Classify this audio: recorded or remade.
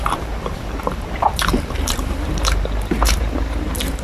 remade